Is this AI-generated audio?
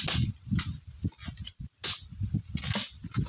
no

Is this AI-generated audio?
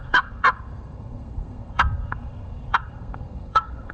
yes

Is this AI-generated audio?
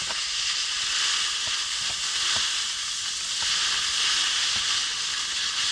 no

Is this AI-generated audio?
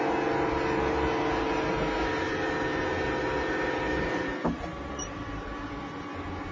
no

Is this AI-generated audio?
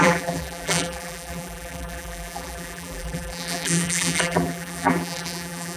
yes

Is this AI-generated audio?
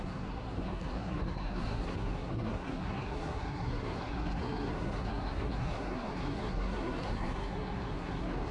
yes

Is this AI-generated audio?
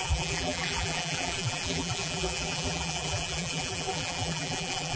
yes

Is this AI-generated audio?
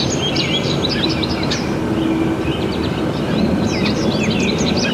no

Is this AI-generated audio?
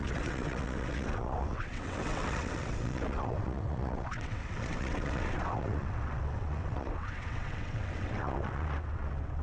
yes